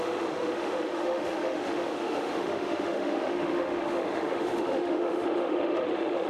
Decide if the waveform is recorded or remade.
remade